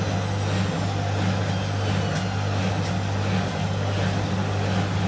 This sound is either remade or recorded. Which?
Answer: recorded